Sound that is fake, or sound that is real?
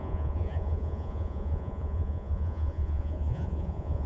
fake